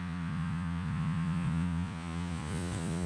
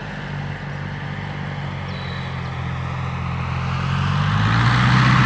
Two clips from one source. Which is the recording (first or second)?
second